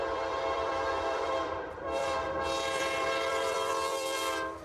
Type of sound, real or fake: fake